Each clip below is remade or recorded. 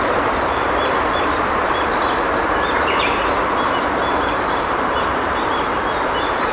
remade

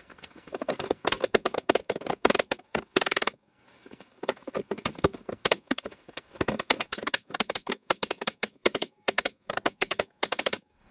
remade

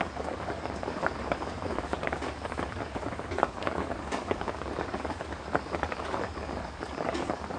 remade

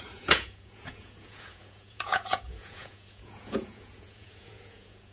remade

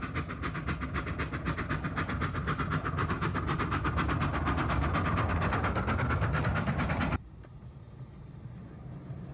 recorded